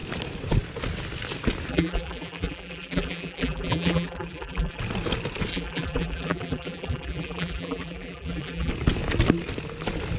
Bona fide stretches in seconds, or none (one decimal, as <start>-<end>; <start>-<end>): 0.0-1.7; 4.8-5.5; 8.7-10.2